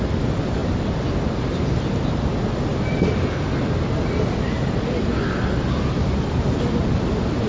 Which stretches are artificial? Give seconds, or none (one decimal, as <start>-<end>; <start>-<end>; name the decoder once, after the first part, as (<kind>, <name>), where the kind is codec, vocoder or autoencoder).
none